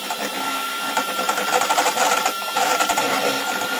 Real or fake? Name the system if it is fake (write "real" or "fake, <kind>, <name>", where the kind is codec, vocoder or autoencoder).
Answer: fake, vocoder, BigVGAN v2